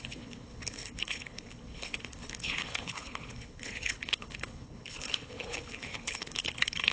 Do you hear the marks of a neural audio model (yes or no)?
yes